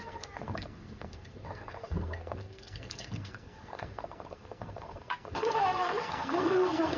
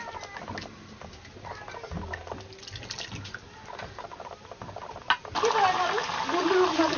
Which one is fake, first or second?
first